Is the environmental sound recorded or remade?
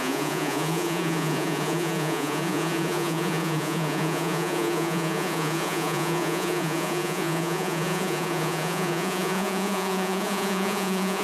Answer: remade